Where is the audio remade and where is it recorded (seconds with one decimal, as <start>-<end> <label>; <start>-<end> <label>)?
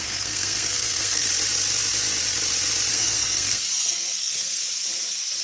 0.0-1.3 remade; 1.3-2.9 recorded; 2.9-4.6 remade; 4.6-5.4 recorded